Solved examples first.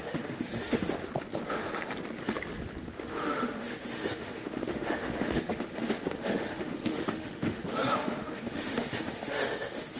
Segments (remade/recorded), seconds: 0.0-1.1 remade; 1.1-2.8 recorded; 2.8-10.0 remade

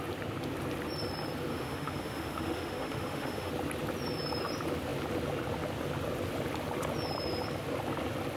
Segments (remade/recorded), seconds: 0.0-1.5 recorded; 1.5-3.5 remade; 3.5-8.4 recorded

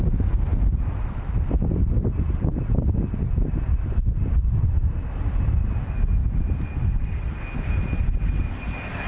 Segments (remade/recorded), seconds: 0.0-9.1 recorded